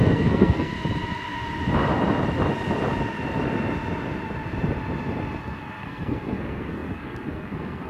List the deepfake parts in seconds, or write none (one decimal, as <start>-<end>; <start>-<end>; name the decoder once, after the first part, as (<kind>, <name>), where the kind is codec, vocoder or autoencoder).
0.0-0.7 (codec, SNAC); 5.4-7.9